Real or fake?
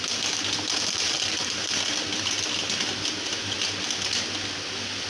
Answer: real